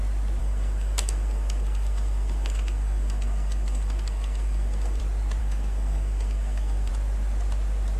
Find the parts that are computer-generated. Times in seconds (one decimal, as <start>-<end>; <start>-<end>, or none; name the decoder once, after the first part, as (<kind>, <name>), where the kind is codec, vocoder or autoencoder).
0.4-5.0 (codec, SNAC); 5.4-6.9